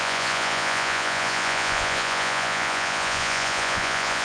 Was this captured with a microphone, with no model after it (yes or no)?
no